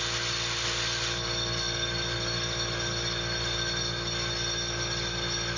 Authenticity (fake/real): real